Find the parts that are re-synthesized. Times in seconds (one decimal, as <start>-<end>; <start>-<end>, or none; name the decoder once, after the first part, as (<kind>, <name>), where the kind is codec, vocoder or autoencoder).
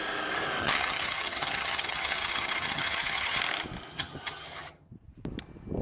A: 0.6-3.4 (vocoder, HiFi-GAN); 3.9-4.9